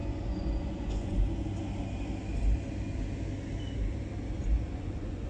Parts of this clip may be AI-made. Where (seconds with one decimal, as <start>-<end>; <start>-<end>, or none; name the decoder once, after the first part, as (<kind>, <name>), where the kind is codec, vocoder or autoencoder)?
0.0-1.2 (vocoder, Vocos); 4.4-5.3